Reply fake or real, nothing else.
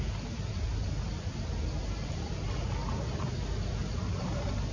real